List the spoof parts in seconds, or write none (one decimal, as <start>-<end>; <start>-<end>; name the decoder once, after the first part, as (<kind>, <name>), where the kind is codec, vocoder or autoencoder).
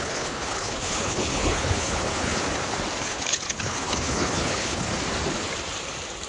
0.0-2.4 (codec, HILCodec); 3.0-4.9